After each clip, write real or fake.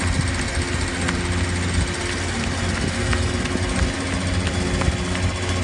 real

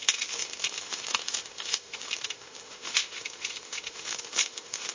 fake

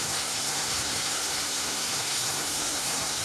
fake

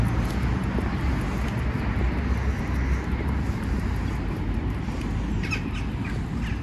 real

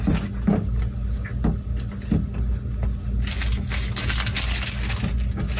real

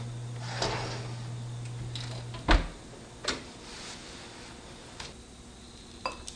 real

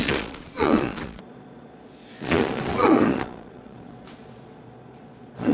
fake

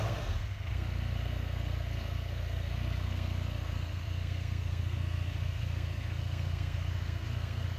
fake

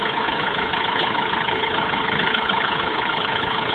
fake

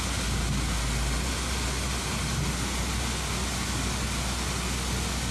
real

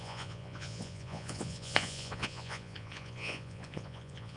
fake